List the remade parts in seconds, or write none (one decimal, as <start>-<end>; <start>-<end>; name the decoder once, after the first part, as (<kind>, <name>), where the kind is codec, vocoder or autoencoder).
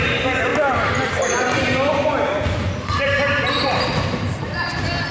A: none